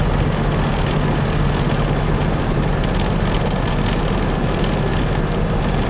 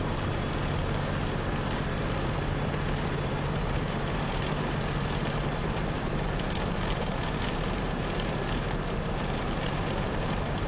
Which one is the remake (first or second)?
second